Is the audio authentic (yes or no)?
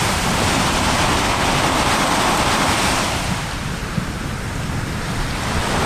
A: yes